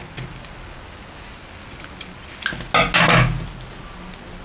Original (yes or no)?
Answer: yes